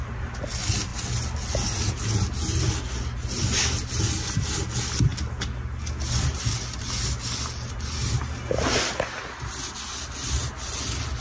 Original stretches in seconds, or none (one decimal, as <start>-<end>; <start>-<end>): 0.0-11.2